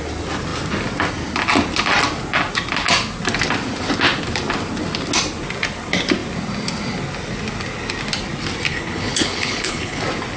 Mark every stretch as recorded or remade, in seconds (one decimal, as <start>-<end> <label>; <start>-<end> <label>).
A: 0.0-8.7 recorded; 8.7-10.0 remade; 10.0-10.4 recorded